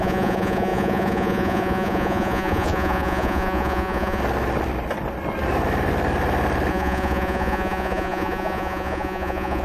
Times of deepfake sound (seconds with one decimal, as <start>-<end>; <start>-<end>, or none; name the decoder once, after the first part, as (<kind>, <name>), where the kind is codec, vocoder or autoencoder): 0.0-4.2 (vocoder, Vocos); 6.7-9.6